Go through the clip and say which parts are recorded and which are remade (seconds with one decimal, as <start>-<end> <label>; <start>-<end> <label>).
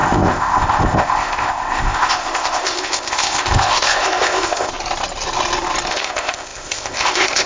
0.0-4.7 remade; 4.7-5.9 recorded; 5.9-7.5 remade